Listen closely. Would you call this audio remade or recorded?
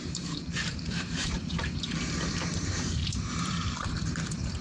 remade